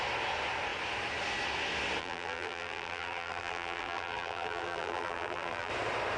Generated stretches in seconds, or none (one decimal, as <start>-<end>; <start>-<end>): 2.0-5.7